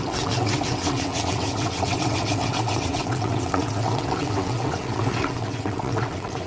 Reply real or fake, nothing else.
fake